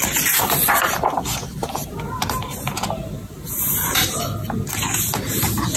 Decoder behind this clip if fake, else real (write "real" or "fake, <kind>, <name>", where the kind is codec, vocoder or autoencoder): real